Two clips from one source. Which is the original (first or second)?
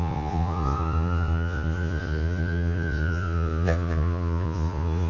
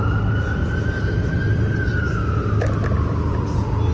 second